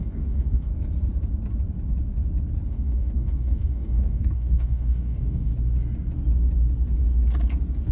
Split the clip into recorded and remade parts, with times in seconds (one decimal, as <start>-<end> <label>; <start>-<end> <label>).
0.0-0.7 remade; 0.7-2.7 recorded; 2.7-5.5 remade; 5.5-7.9 recorded